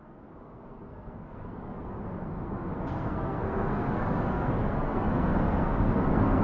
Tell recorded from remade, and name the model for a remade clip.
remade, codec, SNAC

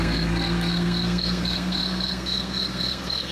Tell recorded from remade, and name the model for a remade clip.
remade, codec, SNAC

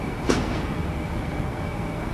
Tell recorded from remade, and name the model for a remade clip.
remade, codec, SNAC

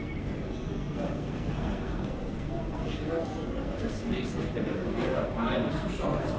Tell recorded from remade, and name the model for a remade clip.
remade, codec, SNAC